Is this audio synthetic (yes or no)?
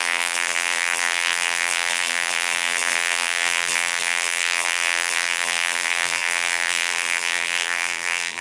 yes